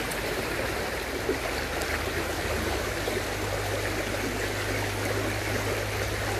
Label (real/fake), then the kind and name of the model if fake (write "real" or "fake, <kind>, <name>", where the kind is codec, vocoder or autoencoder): real